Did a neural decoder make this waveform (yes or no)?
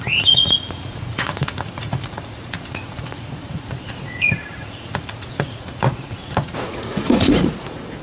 yes